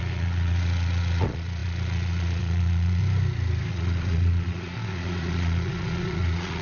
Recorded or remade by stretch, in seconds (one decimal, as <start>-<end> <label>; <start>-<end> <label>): 0.0-3.0 remade; 3.0-3.7 recorded; 3.7-6.6 remade

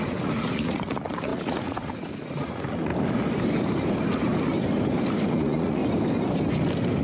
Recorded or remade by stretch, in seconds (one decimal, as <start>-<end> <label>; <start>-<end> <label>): 0.0-2.9 remade; 2.9-5.3 recorded; 5.3-5.8 remade; 5.8-7.0 recorded

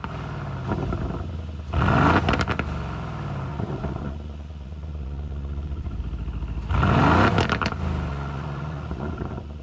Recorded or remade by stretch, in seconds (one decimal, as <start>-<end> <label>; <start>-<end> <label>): 0.0-3.5 recorded; 3.5-6.0 remade; 6.0-8.1 recorded; 8.1-9.6 remade

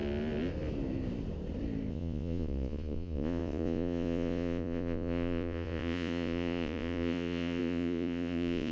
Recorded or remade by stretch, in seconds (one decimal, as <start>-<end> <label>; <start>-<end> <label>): 0.0-1.9 recorded; 1.9-8.7 remade

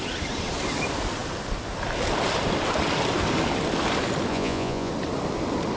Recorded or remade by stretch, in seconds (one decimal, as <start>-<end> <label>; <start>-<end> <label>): 0.0-4.3 recorded; 4.3-4.9 remade; 4.9-5.8 recorded

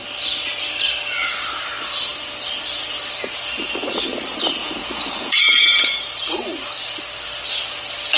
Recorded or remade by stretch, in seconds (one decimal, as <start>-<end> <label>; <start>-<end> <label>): 0.0-4.6 recorded; 4.6-5.4 remade; 5.4-8.2 recorded

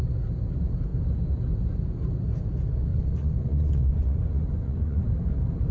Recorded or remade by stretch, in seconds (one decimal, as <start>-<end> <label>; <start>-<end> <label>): 0.0-2.9 recorded; 2.9-5.0 remade; 5.0-5.7 recorded